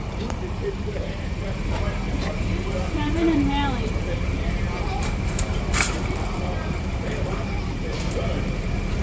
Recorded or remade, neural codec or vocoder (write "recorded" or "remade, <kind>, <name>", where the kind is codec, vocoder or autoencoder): remade, vocoder, BigVGAN v2